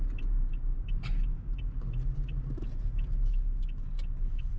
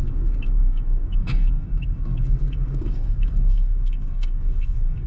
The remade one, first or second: second